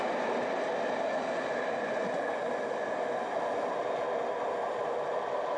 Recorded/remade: recorded